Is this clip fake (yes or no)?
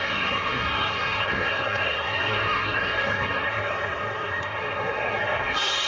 yes